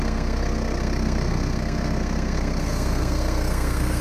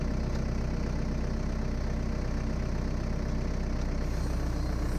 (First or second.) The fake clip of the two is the first